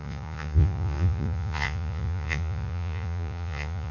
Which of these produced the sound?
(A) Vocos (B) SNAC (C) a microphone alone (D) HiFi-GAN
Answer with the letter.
A